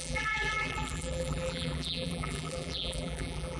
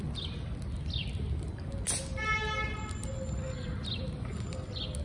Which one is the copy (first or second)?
first